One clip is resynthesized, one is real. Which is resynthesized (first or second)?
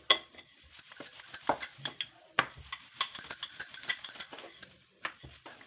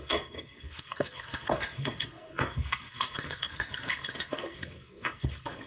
second